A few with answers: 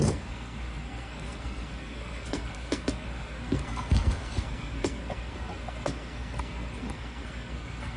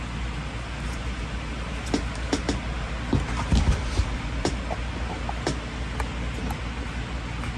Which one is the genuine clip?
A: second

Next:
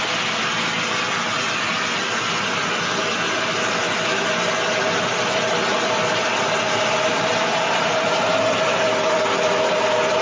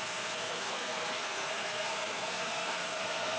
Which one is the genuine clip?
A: first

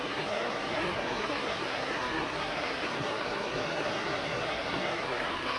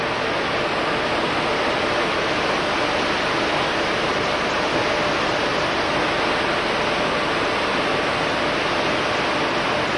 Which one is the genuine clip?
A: second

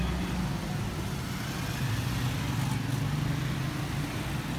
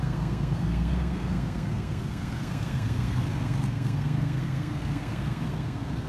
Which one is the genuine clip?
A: first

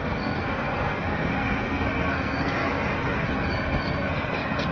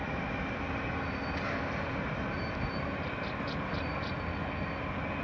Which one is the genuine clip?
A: second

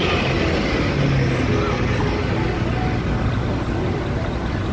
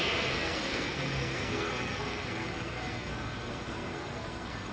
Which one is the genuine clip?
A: first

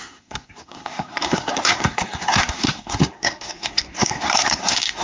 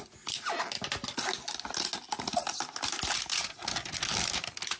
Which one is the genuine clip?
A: second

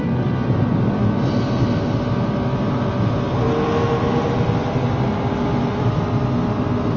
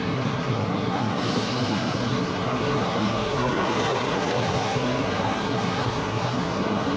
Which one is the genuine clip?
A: first